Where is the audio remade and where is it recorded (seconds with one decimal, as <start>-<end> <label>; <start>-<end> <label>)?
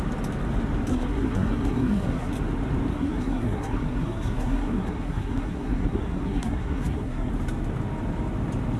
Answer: 0.0-0.9 recorded; 0.9-2.3 remade; 2.3-2.9 recorded; 2.9-7.3 remade; 7.3-8.8 recorded